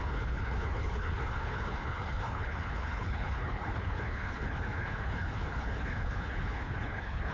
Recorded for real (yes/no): no